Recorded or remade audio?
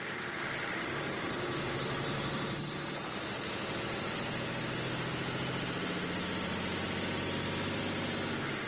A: recorded